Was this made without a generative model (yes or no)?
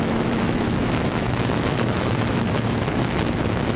no